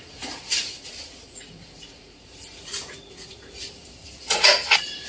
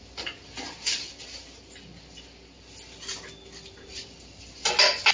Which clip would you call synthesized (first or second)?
first